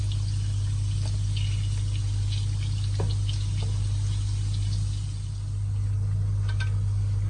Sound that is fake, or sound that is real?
real